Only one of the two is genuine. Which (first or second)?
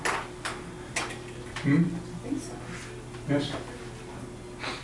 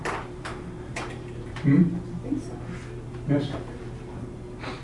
first